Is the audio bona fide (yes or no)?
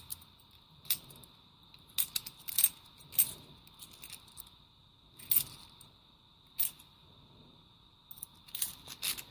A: yes